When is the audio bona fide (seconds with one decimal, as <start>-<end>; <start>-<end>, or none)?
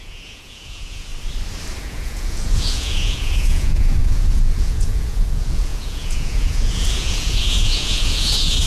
1.1-1.8